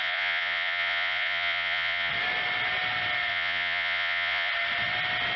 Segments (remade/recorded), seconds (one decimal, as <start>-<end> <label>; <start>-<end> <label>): 0.0-2.1 remade; 2.1-3.3 recorded; 3.3-4.5 remade; 4.5-5.4 recorded